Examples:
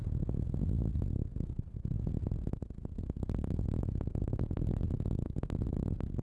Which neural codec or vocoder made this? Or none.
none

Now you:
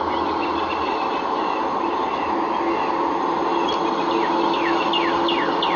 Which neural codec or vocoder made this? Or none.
none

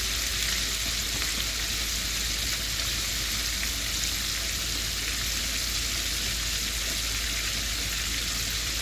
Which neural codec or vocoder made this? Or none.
none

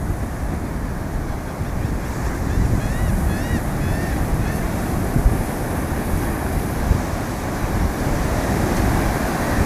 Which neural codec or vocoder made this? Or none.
none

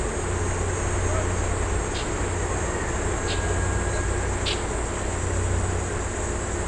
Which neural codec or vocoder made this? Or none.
none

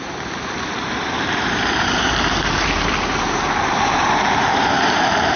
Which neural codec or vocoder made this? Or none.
vocoder, BigVGAN v2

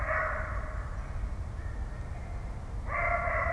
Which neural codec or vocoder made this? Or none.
none